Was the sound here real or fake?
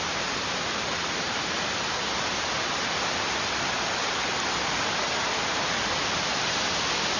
real